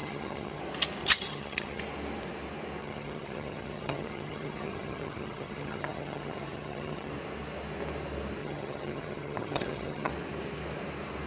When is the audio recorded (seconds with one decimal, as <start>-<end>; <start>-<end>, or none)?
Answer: 0.6-1.0; 1.8-2.8; 7.1-8.4; 10.1-11.3